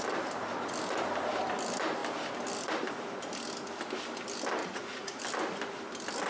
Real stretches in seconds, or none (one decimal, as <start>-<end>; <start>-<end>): 0.0-4.6; 5.2-6.3